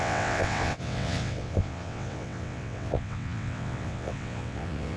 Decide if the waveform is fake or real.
fake